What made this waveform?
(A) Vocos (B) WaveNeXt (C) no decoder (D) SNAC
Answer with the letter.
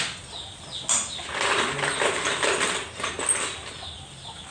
C